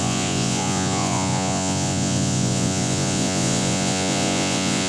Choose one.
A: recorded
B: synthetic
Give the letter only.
B